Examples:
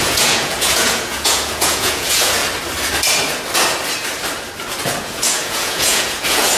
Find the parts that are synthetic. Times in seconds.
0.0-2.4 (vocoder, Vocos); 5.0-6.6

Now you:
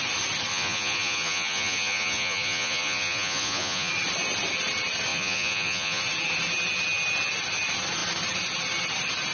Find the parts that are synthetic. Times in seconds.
0.5-3.9 (vocoder, Vocos); 5.1-6.0

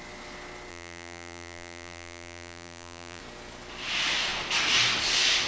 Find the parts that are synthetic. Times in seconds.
0.7-3.2 (vocoder, BigVGAN v2)

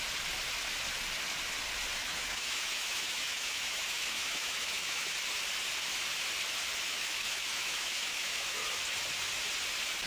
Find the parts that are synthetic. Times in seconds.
2.0-5.1 (autoencoder, DAC-VAE); 6.9-8.6

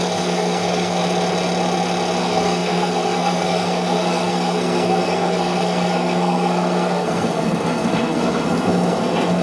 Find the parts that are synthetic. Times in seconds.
0.0-1.0 (codec, SNAC); 2.2-9.4